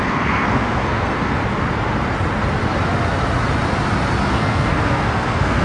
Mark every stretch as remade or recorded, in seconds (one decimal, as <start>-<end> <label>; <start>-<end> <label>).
0.0-1.4 remade; 1.4-4.3 recorded; 4.3-5.6 remade